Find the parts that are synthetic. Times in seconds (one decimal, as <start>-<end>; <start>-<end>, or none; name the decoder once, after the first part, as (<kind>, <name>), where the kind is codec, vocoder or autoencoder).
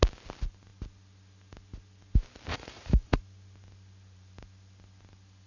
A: 2.5-3.2 (vocoder, Vocos)